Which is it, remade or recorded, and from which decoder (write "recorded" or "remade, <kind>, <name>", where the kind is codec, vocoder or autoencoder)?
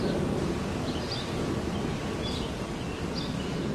recorded